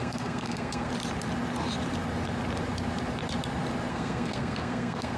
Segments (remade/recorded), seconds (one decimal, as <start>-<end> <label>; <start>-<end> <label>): 0.0-0.9 remade; 0.9-3.9 recorded; 3.9-5.2 remade